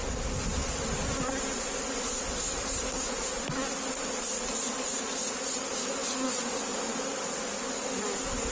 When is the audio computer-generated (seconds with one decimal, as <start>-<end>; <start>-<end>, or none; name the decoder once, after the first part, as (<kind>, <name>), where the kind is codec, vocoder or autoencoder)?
none